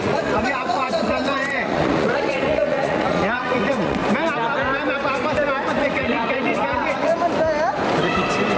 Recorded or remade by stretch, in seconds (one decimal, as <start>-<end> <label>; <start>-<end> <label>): 0.0-4.0 remade; 4.0-5.8 recorded; 5.8-7.1 remade; 7.1-8.6 recorded